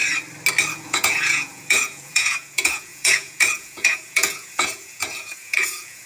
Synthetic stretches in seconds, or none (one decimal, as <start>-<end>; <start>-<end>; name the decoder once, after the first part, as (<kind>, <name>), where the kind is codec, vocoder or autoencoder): 0.7-6.1 (vocoder, Vocos)